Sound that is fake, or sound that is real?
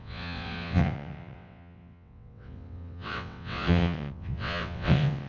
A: fake